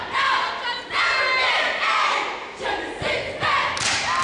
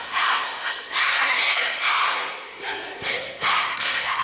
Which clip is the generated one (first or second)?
second